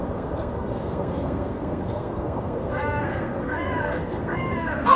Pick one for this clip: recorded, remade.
remade